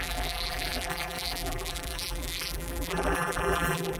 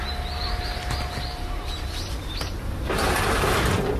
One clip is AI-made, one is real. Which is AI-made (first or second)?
first